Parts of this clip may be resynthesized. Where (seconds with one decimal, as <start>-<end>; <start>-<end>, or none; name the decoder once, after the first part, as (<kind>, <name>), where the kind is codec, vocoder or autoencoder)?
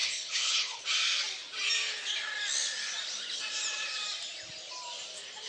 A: 0.0-0.8 (codec, HILCodec)